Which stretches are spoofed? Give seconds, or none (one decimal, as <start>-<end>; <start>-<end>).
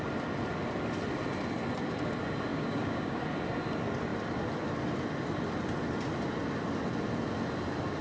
2.5-3.2